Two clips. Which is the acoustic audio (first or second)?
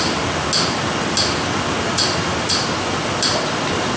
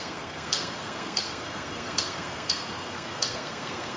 first